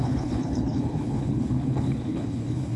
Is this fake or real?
fake